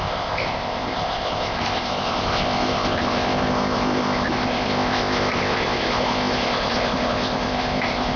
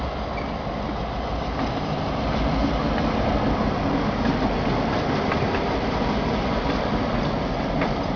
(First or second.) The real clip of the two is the second